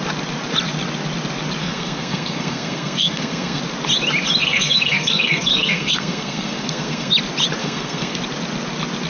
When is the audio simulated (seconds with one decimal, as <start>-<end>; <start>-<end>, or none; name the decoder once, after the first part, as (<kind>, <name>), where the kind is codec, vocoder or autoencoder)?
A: 1.6-3.6 (codec, SNAC); 4.4-7.1; 7.6-8.2